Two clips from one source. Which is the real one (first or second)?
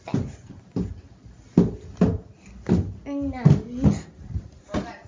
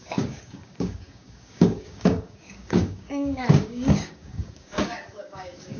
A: first